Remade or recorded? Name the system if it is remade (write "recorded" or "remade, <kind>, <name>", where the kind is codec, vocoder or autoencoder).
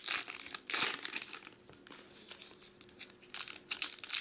recorded